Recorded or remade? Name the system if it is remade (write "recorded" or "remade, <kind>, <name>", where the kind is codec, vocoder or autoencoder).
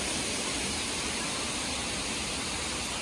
recorded